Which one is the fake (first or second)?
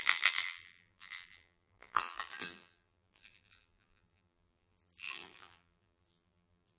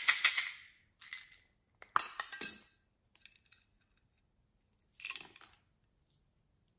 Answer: first